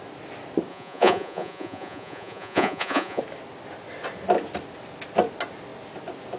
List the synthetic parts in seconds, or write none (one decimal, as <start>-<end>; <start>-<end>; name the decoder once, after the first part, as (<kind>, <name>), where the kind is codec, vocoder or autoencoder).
0.7-3.2 (vocoder, Vocos)